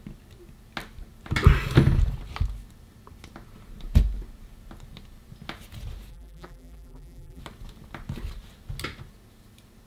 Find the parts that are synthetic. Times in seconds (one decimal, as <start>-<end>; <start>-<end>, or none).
6.1-7.4